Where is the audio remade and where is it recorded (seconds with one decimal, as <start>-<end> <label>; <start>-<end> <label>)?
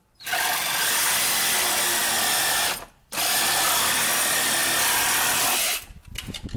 0.0-6.6 recorded